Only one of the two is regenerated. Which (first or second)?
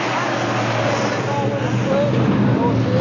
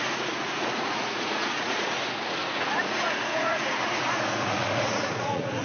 second